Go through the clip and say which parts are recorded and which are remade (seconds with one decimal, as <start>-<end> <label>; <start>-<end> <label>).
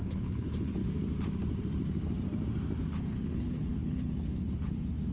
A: 0.0-0.8 remade; 0.8-3.0 recorded; 3.0-5.1 remade